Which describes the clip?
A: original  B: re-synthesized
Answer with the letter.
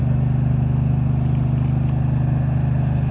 A